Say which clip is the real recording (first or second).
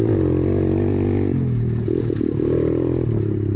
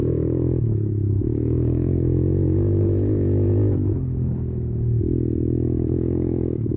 first